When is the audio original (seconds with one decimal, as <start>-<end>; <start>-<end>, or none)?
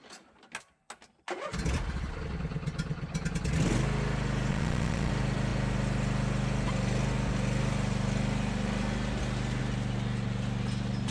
0.0-4.5; 5.1-11.1